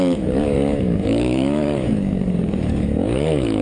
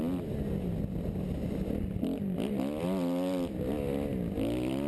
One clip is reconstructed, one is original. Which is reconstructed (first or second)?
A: first